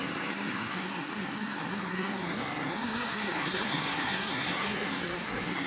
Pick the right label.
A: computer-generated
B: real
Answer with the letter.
A